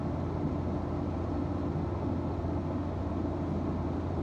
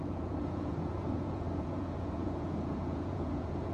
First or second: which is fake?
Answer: second